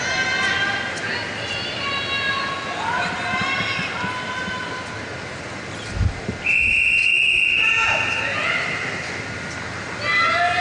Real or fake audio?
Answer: real